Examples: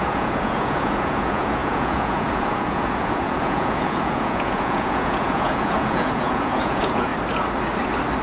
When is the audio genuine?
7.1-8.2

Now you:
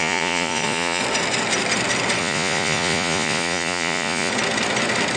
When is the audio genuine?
1.0-2.2; 4.3-5.2

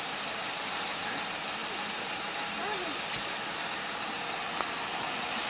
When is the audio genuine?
0.0-5.5

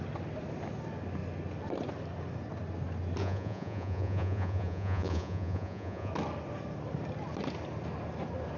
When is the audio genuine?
0.0-3.2; 6.1-8.6